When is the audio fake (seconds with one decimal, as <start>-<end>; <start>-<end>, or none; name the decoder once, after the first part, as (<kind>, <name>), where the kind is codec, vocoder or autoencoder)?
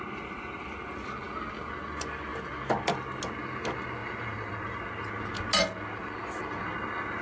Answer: 4.0-4.8 (vocoder, BigVGAN v2)